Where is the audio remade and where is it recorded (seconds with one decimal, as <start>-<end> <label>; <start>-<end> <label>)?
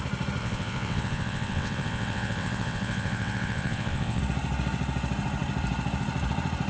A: 0.0-0.4 recorded; 0.4-4.2 remade; 4.2-6.7 recorded